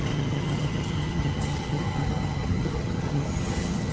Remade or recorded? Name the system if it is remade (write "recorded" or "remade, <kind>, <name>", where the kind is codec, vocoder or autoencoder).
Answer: remade, vocoder, HiFi-GAN